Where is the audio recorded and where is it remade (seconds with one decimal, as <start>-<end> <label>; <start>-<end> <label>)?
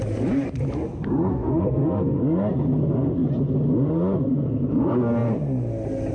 0.0-1.3 recorded; 1.3-2.2 remade; 2.2-6.1 recorded